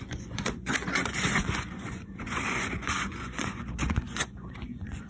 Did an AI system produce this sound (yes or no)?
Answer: yes